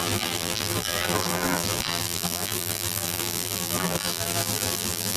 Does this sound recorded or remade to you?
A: remade